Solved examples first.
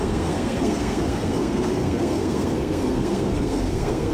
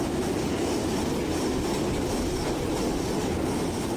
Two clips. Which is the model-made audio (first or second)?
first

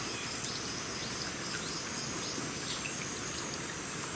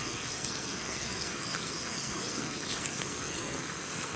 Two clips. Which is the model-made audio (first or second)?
second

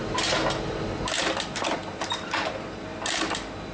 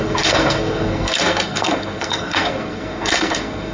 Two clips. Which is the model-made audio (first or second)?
second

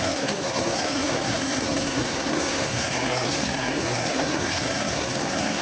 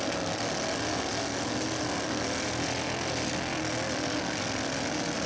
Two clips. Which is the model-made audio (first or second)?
first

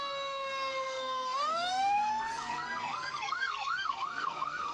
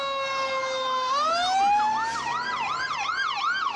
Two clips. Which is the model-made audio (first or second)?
first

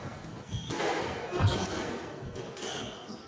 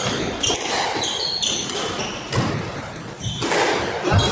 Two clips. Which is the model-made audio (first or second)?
first